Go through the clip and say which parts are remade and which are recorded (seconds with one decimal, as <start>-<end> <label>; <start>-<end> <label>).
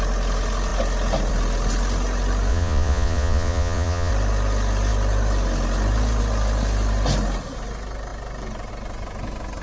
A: 0.0-2.5 recorded; 2.5-4.1 remade; 4.1-9.6 recorded